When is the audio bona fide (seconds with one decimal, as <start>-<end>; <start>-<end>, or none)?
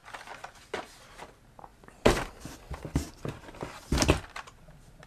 0.0-5.1